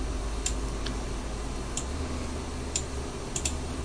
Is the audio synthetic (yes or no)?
no